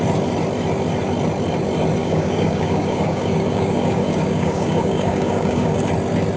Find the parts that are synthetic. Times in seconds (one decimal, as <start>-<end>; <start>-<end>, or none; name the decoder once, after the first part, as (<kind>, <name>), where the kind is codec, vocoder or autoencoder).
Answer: 2.0-5.8 (codec, DAC)